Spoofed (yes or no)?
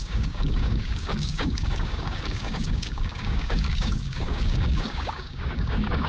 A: yes